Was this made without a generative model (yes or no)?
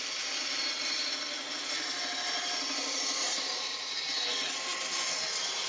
yes